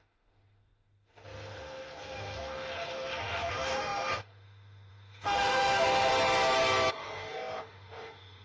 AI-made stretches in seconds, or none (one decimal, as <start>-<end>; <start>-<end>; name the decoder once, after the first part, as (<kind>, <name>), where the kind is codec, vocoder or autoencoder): 0.0-6.1 (autoencoder, DAC-VAE); 6.9-8.4